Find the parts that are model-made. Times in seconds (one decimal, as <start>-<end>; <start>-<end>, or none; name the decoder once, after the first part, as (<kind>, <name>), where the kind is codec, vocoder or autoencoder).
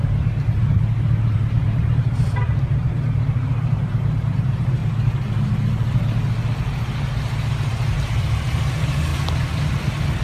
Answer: 0.0-4.8 (vocoder, BigVGAN v2); 7.5-9.1